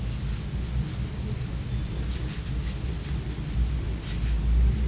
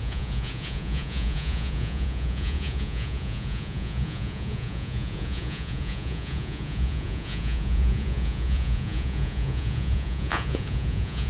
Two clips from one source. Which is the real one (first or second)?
first